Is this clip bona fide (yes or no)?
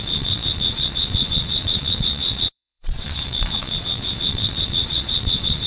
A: no